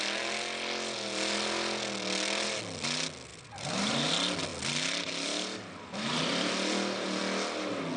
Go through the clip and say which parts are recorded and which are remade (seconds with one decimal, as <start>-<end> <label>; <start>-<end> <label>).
0.0-3.3 recorded; 3.3-4.1 remade; 4.1-4.5 recorded; 4.5-7.2 remade; 7.2-8.0 recorded